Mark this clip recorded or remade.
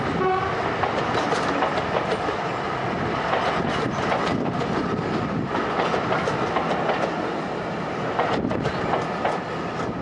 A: recorded